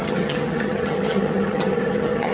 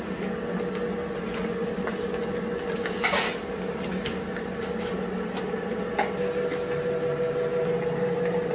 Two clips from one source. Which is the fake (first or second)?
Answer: first